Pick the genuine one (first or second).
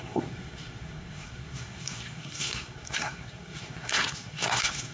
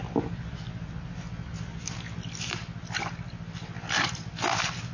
second